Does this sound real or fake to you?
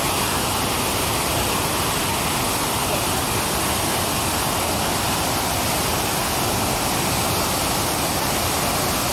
real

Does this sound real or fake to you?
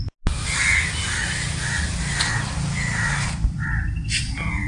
real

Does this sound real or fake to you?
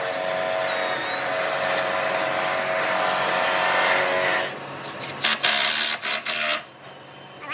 real